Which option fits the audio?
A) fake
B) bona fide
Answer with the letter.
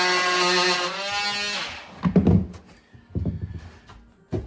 B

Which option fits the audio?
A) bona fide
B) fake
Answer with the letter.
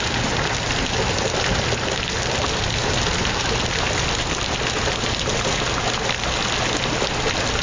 A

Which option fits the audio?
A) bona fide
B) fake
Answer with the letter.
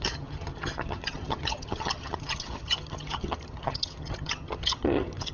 B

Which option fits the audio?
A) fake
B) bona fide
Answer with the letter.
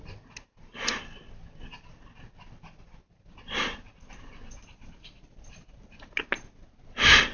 B